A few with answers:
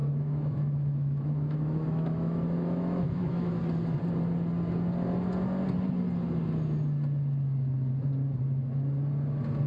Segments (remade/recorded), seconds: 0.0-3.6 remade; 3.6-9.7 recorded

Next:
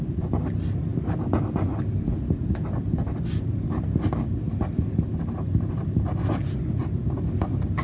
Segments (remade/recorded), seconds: 0.0-7.8 recorded